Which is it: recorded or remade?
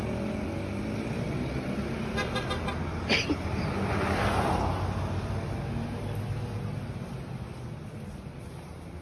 recorded